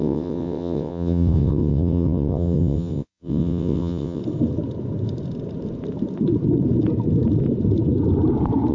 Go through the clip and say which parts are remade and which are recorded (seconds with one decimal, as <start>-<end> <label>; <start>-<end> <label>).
0.0-4.2 remade; 4.2-8.7 recorded